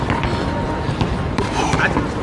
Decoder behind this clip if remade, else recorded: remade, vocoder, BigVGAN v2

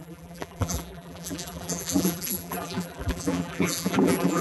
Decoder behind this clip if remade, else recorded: remade, vocoder, BigVGAN v2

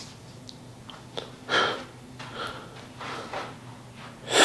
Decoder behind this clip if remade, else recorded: recorded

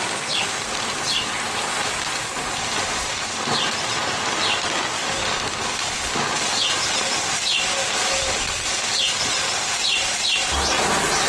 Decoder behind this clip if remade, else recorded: recorded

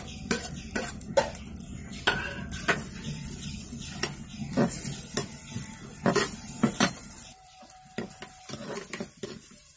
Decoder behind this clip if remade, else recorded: recorded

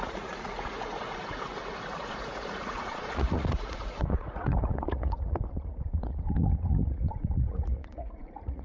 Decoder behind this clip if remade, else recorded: remade, vocoder, Vocos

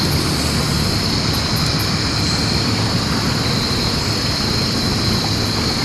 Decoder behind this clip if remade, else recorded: recorded